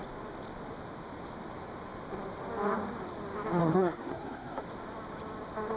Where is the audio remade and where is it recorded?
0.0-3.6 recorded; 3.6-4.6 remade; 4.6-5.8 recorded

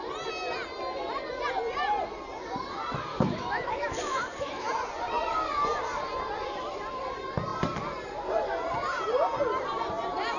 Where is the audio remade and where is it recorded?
0.0-3.1 recorded; 3.1-4.7 remade; 4.7-10.4 recorded

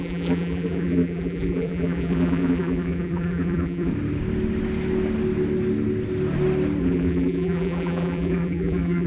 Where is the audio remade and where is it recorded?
0.0-3.9 remade; 3.9-6.8 recorded; 6.8-9.1 remade

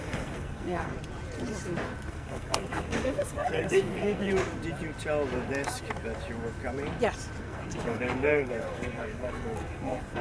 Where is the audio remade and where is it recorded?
0.0-0.9 remade; 0.9-2.1 recorded; 2.1-4.3 remade; 4.3-7.4 recorded; 7.4-10.2 remade

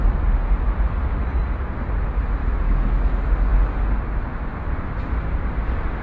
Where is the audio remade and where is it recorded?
0.0-2.4 recorded; 2.4-3.0 remade; 3.0-6.0 recorded

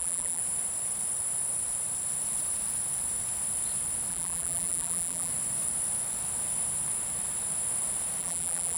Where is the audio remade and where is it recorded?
0.0-0.4 remade; 0.4-4.1 recorded; 4.1-5.3 remade; 5.3-8.2 recorded; 8.2-8.8 remade